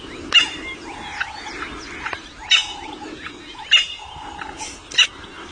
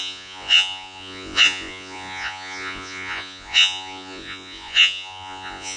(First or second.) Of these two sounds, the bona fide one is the first